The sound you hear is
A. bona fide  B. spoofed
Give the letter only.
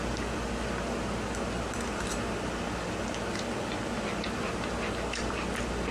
A